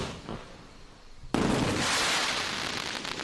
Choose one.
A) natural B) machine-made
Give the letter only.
A